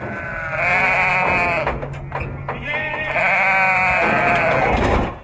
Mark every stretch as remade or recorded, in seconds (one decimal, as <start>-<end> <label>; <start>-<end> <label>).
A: 0.0-5.2 recorded